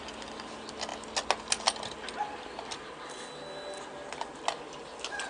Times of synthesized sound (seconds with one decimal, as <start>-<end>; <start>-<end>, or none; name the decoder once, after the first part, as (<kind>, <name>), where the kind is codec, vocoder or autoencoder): none